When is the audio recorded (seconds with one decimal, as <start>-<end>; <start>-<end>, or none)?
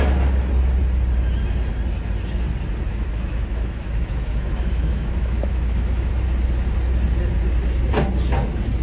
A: 0.0-2.9; 6.1-8.8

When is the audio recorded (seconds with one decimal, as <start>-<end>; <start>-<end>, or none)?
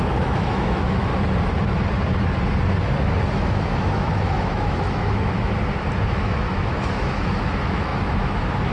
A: 1.1-3.3; 5.5-6.1